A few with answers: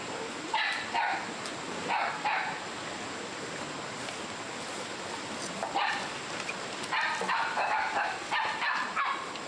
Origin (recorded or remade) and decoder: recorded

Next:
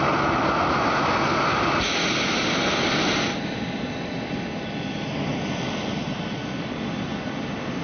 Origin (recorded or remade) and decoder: recorded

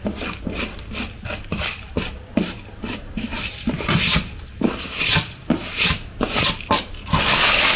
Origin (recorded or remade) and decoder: remade, vocoder, BigVGAN v2